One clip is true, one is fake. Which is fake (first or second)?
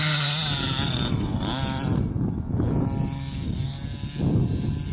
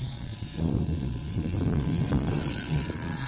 second